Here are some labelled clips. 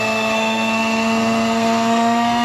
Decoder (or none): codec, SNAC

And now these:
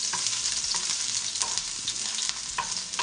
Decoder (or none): none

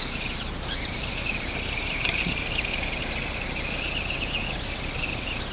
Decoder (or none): none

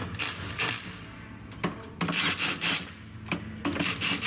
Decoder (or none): none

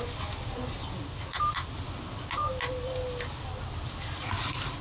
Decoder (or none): none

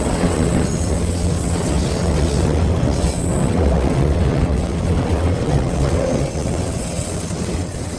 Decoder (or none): vocoder, WaveNeXt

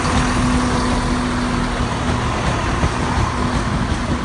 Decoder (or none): none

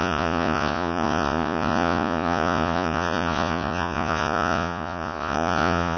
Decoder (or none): vocoder, Vocos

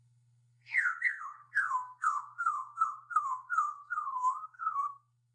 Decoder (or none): codec, SNAC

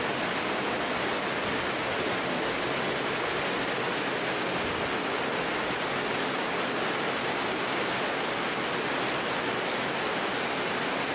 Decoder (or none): none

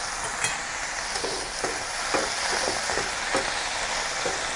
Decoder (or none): none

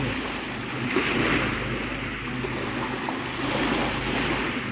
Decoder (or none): none